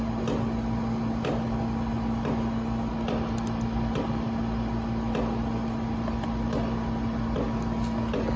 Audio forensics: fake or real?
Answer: real